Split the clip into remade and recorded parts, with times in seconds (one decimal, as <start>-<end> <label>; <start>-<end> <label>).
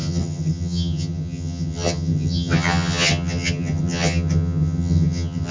0.0-5.5 remade